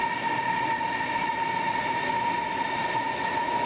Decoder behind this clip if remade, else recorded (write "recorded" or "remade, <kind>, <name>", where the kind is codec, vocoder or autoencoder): remade, vocoder, BigVGAN v2